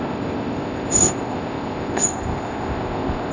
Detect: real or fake fake